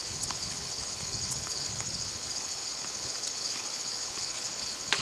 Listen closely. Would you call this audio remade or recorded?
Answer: remade